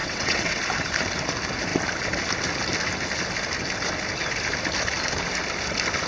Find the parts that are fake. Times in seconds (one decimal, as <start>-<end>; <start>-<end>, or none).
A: 0.0-0.6